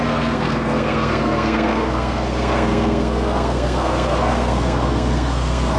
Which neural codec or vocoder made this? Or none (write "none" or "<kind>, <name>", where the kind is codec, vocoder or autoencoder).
codec, SNAC